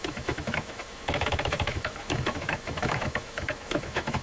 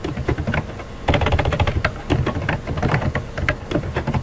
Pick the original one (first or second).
second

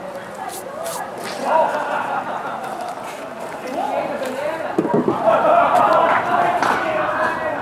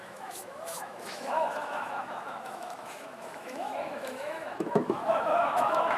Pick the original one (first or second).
first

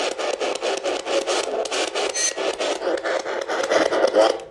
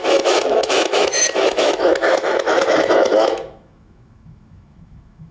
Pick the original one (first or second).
first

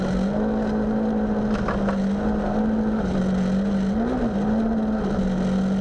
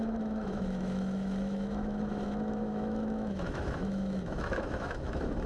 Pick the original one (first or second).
first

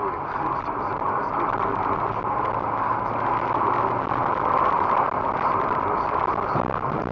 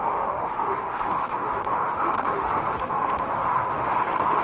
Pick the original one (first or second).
first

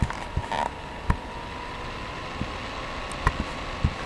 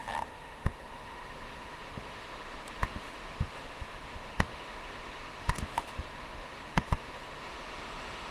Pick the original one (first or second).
first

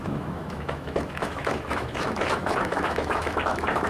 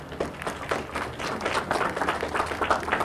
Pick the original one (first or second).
second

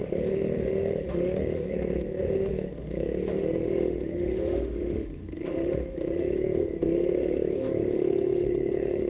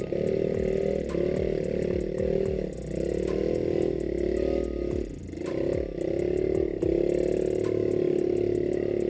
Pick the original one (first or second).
second